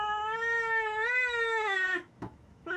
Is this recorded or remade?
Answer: remade